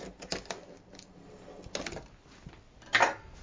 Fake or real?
real